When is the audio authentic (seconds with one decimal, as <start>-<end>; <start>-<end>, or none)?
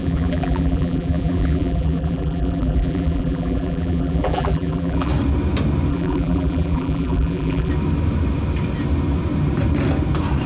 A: 5.1-5.9; 7.7-10.5